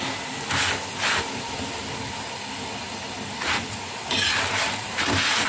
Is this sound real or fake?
real